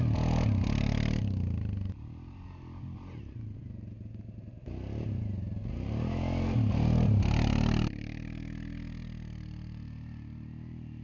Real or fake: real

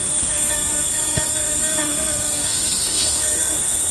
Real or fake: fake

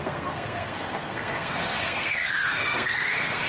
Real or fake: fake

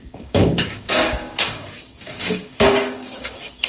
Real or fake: fake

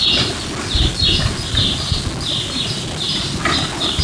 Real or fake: real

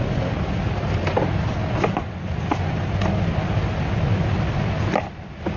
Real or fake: real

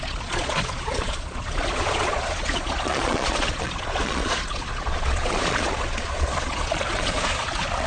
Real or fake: fake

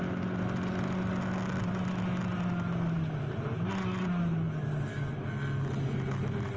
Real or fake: real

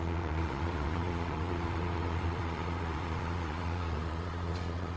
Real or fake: fake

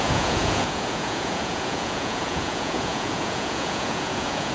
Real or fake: fake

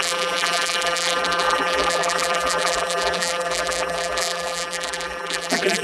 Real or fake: fake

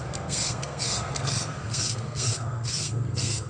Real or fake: fake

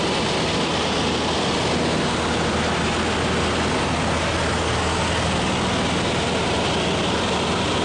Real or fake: real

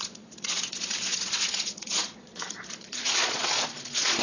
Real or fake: fake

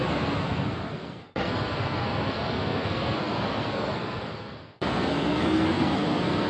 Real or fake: fake